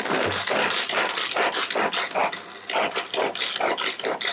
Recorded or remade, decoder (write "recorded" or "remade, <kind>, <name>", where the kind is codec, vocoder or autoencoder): recorded